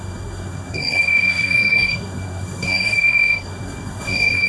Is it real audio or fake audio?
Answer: fake